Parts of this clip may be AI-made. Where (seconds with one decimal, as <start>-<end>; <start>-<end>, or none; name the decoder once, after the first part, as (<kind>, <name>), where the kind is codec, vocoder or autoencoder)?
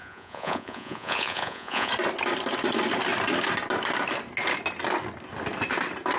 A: 0.0-1.9 (vocoder, Vocos)